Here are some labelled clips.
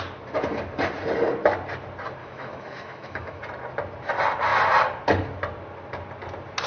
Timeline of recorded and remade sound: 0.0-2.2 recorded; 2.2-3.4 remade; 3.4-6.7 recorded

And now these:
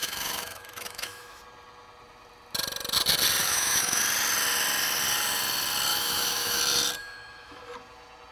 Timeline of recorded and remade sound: 0.0-1.4 remade; 1.4-3.4 recorded; 3.4-4.0 remade; 4.0-5.9 recorded; 5.9-6.6 remade; 6.6-7.0 recorded; 7.0-7.6 remade; 7.6-8.3 recorded